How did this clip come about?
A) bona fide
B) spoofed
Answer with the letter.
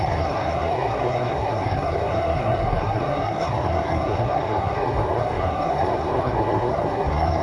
B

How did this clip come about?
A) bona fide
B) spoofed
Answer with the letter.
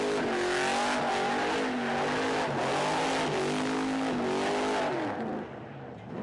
A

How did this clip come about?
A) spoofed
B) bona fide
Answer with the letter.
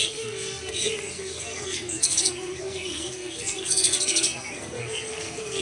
A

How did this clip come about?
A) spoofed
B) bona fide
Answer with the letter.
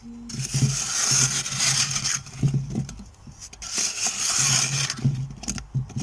B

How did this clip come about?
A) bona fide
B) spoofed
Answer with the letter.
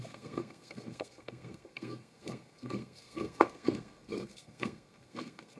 B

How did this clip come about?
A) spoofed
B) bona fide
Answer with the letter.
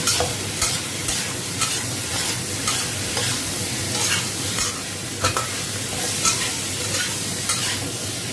B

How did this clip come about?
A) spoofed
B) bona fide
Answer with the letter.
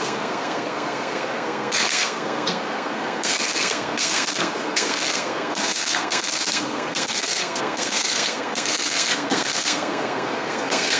A